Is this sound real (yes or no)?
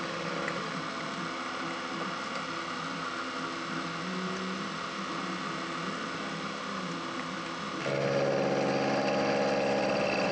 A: yes